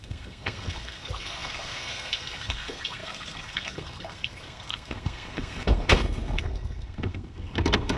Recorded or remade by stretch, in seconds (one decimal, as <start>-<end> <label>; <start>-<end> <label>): 0.0-8.0 remade